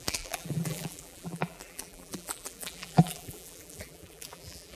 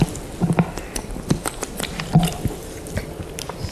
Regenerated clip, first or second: first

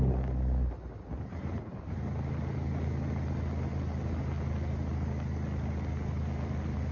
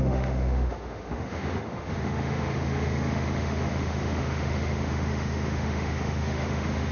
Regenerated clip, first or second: second